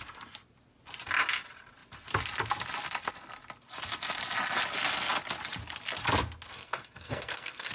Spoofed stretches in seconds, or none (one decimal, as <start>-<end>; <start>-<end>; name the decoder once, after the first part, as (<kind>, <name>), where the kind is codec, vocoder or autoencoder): 6.5-7.7 (codec, SNAC)